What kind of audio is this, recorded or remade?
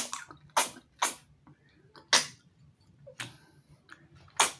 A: recorded